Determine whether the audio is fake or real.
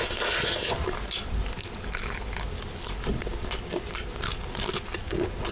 real